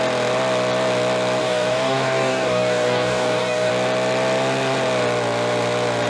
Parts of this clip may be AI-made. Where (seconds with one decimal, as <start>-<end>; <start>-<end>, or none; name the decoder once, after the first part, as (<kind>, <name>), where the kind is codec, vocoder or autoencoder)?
1.4-3.7 (codec, DAC)

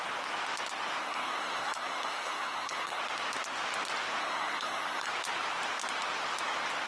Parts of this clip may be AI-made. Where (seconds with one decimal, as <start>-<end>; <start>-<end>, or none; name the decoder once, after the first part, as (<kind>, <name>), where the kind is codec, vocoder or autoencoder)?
1.0-3.0 (codec, SNAC); 4.2-5.1

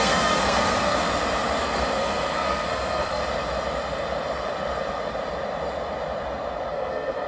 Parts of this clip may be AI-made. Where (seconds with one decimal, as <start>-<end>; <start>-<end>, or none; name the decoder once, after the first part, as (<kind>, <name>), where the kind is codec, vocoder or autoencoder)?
0.0-1.0 (codec, SNAC); 1.6-3.2; 6.7-7.3

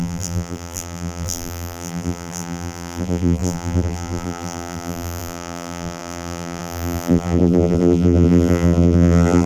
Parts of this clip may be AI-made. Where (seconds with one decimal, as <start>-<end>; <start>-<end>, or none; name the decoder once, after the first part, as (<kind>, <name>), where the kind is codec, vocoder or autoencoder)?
0.0-9.5 (vocoder, BigVGAN v2)